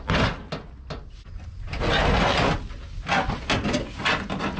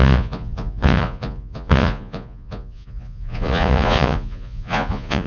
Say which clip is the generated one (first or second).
second